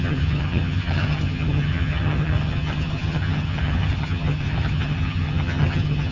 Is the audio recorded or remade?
remade